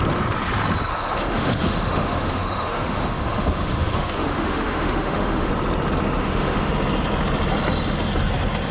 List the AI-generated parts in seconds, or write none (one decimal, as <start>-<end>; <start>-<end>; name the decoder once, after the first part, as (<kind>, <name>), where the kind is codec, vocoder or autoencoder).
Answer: 0.9-5.5 (autoencoder, DAC-VAE); 6.2-6.7